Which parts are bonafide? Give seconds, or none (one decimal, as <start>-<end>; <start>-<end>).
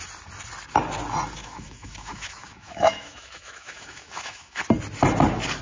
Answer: 0.0-1.4; 4.6-5.6